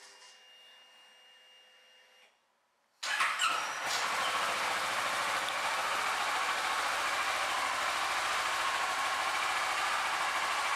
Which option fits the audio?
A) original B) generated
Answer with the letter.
A